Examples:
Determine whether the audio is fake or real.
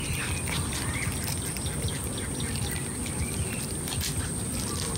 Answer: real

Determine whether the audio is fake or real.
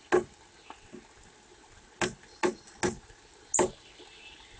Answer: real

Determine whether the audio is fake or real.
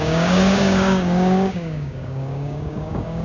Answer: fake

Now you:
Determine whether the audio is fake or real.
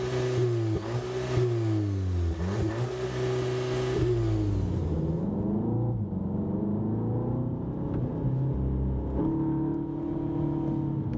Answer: real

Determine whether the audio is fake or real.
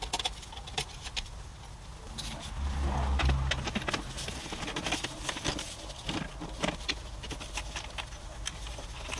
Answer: real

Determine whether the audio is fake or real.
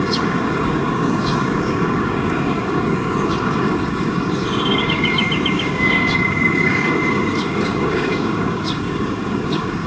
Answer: fake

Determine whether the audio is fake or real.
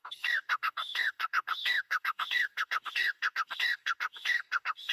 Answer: fake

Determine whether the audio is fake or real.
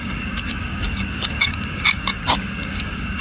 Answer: fake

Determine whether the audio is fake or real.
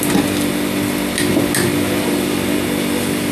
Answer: real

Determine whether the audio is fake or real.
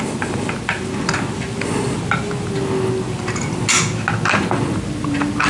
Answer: real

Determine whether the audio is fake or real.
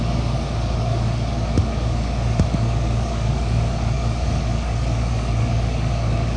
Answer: fake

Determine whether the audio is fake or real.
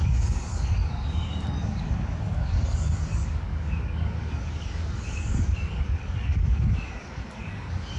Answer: fake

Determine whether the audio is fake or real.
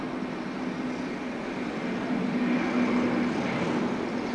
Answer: real